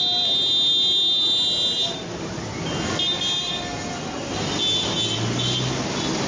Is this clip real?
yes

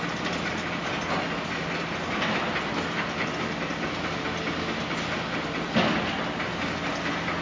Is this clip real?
yes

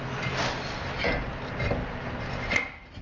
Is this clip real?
yes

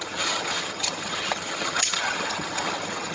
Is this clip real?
no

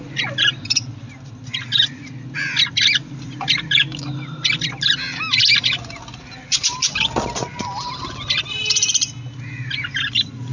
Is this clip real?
yes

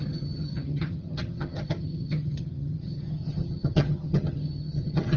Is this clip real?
no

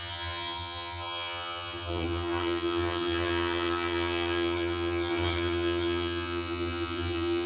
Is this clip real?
no